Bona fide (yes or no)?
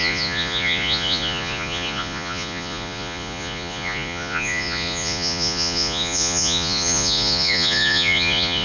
no